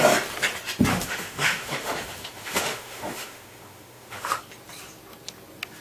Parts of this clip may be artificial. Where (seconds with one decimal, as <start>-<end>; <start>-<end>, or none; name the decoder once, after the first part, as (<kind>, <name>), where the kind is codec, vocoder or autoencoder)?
0.9-4.4 (autoencoder, DAC-VAE)